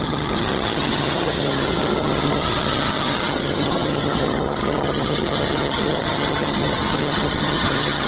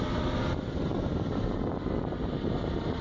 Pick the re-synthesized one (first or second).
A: first